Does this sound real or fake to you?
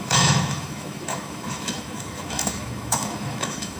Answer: fake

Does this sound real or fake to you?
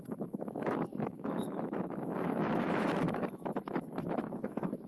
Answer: fake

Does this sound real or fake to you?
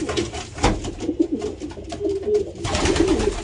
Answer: real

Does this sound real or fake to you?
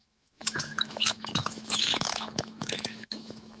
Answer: fake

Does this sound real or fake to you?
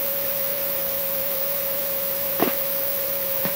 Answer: fake